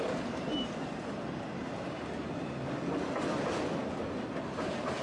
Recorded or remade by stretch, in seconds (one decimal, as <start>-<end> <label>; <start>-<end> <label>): 0.0-5.0 recorded